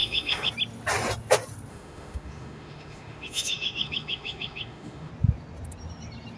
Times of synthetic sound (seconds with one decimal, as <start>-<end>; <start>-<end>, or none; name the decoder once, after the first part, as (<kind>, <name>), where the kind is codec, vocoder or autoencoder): 0.0-0.5 (autoencoder, DAC-VAE); 1.7-5.1